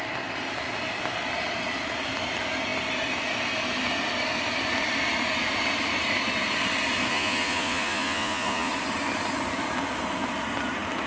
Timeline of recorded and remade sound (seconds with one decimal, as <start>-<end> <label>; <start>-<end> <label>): 0.0-7.1 recorded; 7.1-8.7 remade; 8.7-11.1 recorded